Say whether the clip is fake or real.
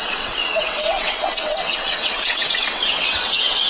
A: fake